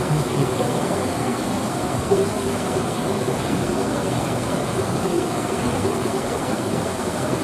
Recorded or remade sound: remade